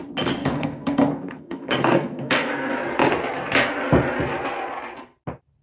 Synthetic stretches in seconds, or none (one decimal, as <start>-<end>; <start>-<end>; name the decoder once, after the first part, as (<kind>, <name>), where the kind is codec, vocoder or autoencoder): 0.4-2.7 (codec, SNAC)